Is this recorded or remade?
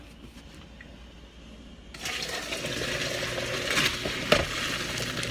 recorded